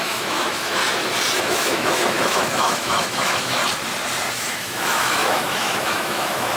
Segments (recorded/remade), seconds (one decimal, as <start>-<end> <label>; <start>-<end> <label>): 0.0-0.8 remade; 0.8-1.4 recorded; 1.4-3.6 remade; 3.6-4.3 recorded; 4.3-6.6 remade

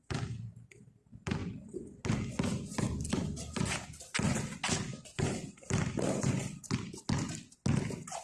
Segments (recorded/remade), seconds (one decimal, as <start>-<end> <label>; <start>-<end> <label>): 0.0-8.2 recorded

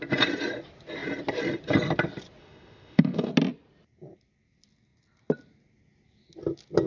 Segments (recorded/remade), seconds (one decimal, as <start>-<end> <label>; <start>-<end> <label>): 0.0-2.4 recorded; 2.4-3.3 remade; 3.3-6.9 recorded

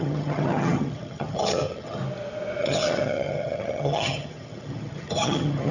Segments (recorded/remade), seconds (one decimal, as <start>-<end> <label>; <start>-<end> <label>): 0.0-2.0 remade; 2.0-2.6 recorded; 2.6-5.7 remade

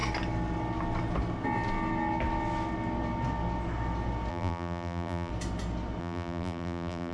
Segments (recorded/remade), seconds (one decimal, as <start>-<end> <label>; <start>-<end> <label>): 0.0-4.3 recorded; 4.3-5.3 remade; 5.3-6.0 recorded; 6.0-7.1 remade

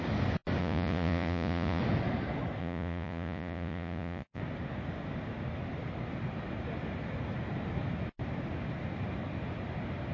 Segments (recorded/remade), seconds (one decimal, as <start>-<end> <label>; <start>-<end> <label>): 0.0-0.6 recorded; 0.6-1.8 remade; 1.8-2.6 recorded; 2.6-4.4 remade; 4.4-10.1 recorded